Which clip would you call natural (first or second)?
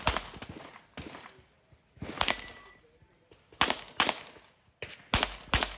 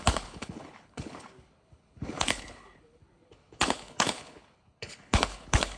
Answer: first